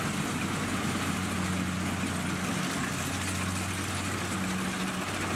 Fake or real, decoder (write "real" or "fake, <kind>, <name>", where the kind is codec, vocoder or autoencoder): real